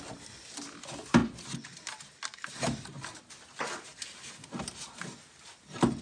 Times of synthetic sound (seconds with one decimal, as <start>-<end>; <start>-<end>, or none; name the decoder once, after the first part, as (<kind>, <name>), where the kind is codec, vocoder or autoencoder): none